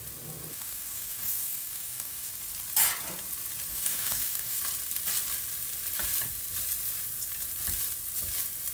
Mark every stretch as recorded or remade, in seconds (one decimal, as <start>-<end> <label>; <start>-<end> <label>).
0.0-0.5 recorded; 0.5-2.3 remade; 2.3-3.7 recorded; 3.7-4.6 remade; 4.6-8.7 recorded